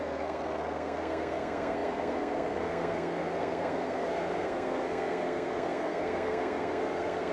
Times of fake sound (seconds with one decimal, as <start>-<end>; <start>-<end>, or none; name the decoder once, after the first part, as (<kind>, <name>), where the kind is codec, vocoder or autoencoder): 0.0-7.3 (codec, SNAC)